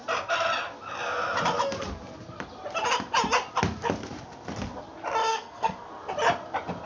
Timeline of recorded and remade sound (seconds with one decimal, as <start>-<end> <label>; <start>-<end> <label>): 0.0-5.3 recorded; 5.3-5.9 remade; 5.9-6.9 recorded